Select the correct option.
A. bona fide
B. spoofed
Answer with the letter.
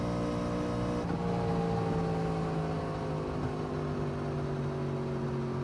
A